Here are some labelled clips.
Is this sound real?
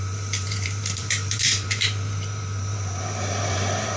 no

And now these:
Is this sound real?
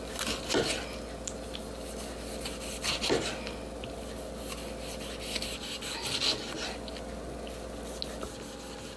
yes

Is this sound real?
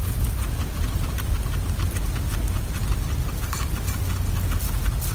yes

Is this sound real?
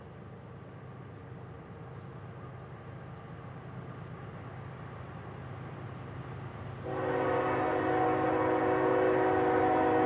yes